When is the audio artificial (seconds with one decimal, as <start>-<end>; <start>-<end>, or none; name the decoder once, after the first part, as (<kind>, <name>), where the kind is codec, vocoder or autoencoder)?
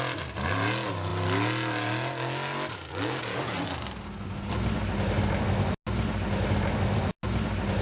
none